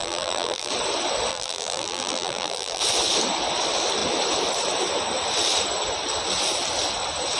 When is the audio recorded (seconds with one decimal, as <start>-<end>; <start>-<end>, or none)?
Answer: 0.7-1.3; 2.8-7.4